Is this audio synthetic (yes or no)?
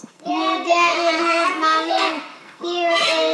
yes